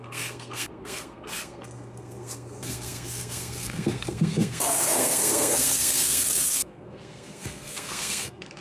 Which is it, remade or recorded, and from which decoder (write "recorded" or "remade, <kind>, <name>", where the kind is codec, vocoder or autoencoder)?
remade, codec, SNAC